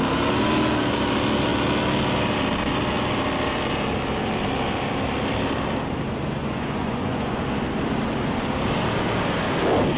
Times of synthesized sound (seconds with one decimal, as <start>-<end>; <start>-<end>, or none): 6.4-7.4